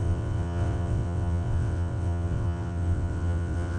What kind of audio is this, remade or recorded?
remade